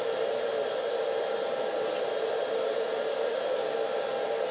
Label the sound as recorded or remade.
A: recorded